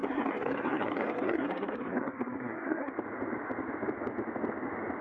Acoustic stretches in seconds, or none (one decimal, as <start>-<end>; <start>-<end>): 2.9-5.0